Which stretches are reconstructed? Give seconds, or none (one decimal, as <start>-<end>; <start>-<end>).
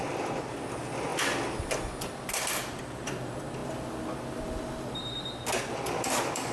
none